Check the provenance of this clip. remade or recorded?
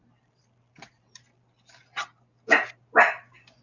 recorded